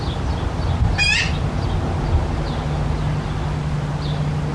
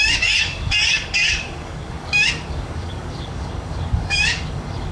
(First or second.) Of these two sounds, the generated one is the second